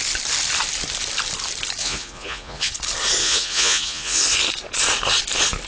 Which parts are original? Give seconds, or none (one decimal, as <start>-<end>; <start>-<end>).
0.0-1.8; 2.7-3.2; 4.2-5.7